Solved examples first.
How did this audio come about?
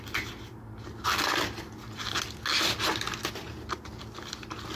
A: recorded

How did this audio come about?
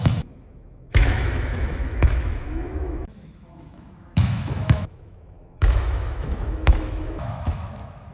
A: remade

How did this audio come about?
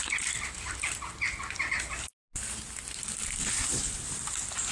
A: recorded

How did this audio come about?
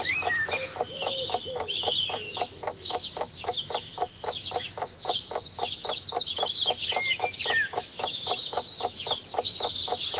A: remade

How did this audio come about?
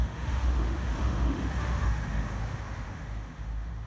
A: remade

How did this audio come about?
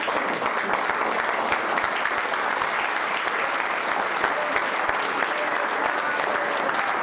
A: recorded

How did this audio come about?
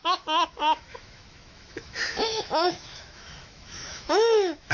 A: remade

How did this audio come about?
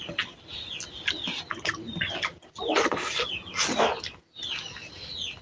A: recorded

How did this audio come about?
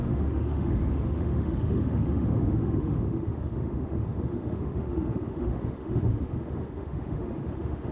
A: remade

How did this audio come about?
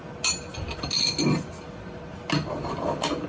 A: recorded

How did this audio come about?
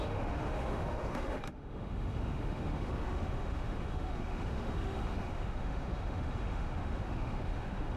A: remade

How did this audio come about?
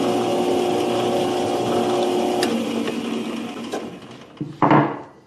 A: recorded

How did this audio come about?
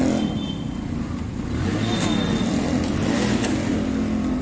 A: recorded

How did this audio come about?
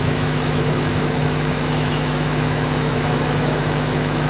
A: remade